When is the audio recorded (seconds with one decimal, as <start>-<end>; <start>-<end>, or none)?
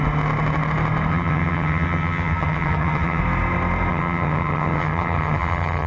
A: 0.0-1.1; 3.2-3.9